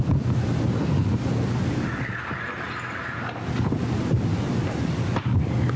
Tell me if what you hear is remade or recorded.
recorded